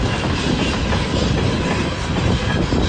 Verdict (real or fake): real